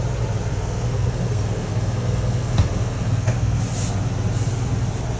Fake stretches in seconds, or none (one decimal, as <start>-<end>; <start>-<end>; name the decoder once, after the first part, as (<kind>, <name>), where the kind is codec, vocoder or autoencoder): 0.5-3.6 (codec, SNAC)